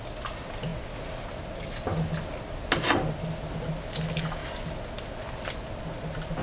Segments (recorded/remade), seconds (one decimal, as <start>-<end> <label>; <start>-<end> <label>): 0.0-6.4 recorded